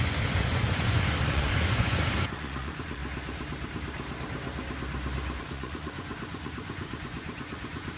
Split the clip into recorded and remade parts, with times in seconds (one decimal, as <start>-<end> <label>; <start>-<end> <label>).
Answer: 0.0-3.0 remade; 3.0-5.4 recorded; 5.4-8.0 remade